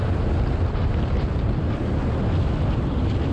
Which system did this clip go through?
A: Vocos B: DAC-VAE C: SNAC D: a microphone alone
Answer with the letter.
D